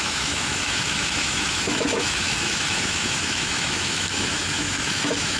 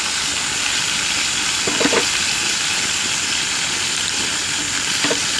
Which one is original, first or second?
second